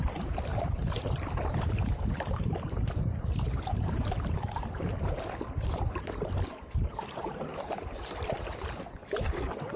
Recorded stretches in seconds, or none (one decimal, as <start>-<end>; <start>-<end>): none